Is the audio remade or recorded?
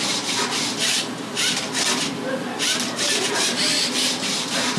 remade